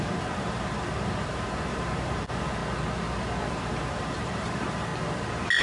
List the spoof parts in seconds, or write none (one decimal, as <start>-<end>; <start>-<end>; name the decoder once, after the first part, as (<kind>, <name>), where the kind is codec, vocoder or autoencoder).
0.0-2.6 (vocoder, BigVGAN v2); 3.5-4.9